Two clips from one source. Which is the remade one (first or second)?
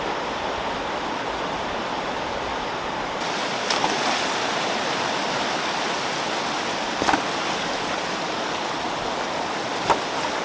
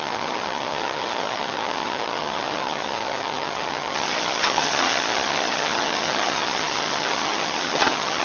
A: second